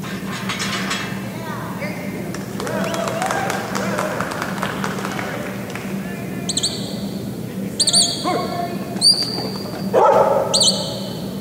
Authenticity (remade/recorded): recorded